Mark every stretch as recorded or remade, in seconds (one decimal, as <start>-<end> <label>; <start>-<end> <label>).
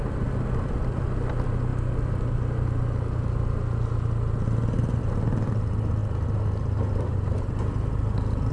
0.0-8.5 recorded